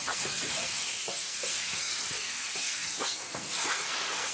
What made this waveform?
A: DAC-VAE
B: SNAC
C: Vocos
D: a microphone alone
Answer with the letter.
B